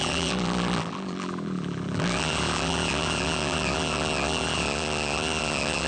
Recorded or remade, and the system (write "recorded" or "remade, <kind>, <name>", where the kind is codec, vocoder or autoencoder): remade, vocoder, BigVGAN v2